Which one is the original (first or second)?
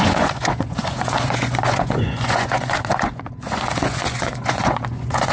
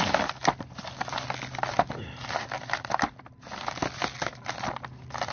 second